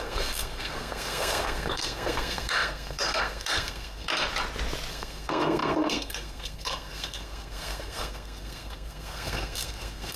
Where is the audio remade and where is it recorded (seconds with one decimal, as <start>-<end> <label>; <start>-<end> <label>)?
0.0-4.1 remade; 4.1-4.9 recorded; 4.9-10.2 remade